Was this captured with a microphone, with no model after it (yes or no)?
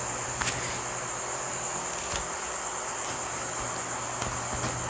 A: yes